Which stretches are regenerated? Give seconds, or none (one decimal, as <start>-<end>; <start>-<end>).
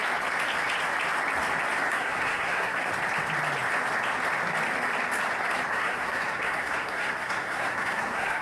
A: 1.9-2.9; 5.7-8.4